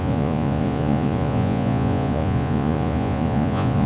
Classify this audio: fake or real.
fake